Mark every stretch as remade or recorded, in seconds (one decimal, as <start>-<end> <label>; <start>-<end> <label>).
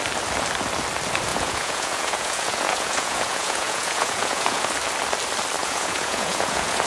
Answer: 0.0-1.3 recorded; 1.3-4.7 remade; 4.7-5.6 recorded; 5.6-6.9 remade